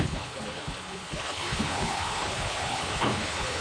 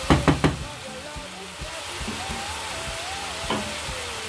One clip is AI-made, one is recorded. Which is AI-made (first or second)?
first